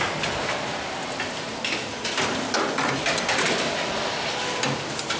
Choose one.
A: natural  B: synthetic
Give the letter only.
A